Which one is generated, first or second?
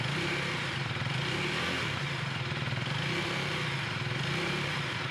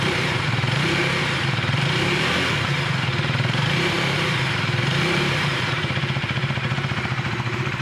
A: second